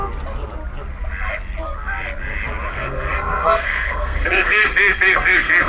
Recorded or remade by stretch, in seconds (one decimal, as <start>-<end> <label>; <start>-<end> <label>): 0.0-2.7 recorded; 2.7-5.7 remade